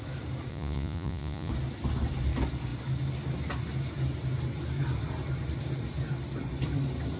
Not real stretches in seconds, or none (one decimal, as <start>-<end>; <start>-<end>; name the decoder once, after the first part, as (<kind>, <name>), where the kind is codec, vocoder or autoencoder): 0.5-1.5 (vocoder, Vocos)